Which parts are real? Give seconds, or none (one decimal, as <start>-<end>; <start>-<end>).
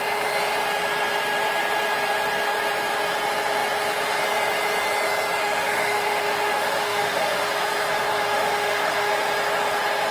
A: 0.0-5.4; 7.5-8.1; 9.1-10.1